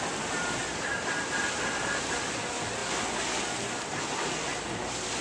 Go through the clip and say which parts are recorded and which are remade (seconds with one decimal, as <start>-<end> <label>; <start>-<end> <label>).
0.0-2.8 remade; 2.8-5.2 recorded